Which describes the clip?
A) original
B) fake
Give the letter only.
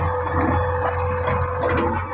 A